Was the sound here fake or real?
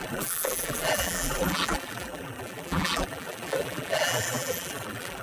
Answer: fake